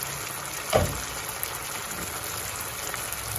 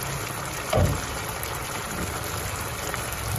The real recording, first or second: first